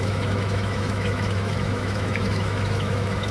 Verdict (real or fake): fake